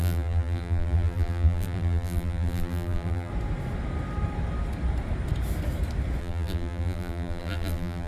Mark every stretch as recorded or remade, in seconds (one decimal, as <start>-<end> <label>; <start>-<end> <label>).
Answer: 0.0-3.3 remade; 3.3-6.2 recorded; 6.2-8.1 remade